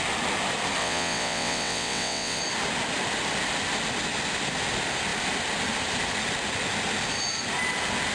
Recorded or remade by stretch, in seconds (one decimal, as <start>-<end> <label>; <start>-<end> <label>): 0.0-0.8 recorded; 0.8-2.4 remade; 2.4-8.1 recorded